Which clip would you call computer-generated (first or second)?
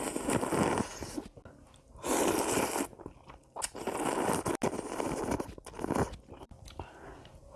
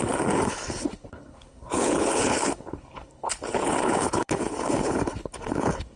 second